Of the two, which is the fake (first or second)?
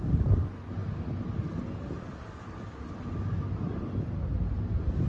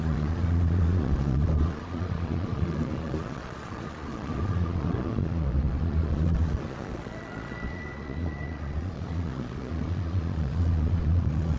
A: second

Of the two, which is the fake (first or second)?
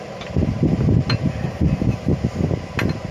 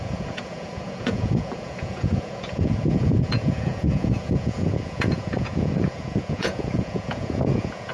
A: second